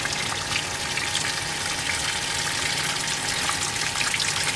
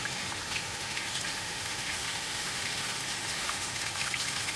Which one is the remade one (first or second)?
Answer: second